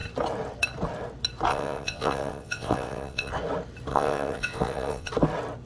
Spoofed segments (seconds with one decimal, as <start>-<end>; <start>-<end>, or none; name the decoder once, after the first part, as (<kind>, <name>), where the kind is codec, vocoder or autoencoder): 1.5-3.3 (vocoder, WaveNeXt); 3.9-5.1